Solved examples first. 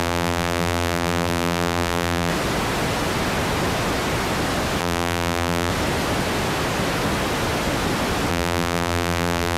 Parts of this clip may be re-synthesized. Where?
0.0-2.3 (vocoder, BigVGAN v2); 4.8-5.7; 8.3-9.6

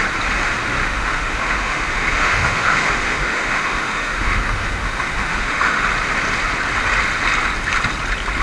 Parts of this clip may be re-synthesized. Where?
0.8-5.8 (autoencoder, DAC-VAE)

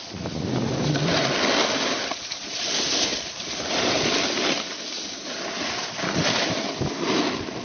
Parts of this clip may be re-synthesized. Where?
none

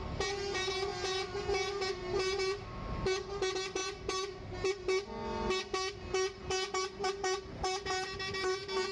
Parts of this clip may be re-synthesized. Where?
none

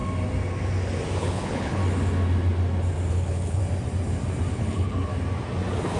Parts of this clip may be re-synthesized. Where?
1.2-1.8 (codec, HILCodec); 3.1-3.6; 4.5-5.1

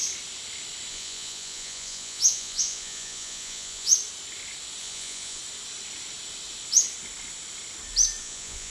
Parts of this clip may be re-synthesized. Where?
0.9-3.9 (vocoder, Vocos); 4.8-5.4; 8.2-8.7

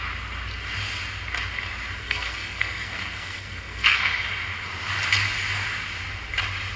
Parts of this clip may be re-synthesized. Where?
2.0-4.3 (codec, SNAC)

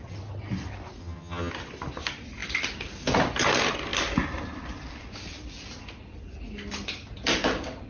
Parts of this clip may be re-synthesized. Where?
1.0-1.5 (vocoder, HiFi-GAN)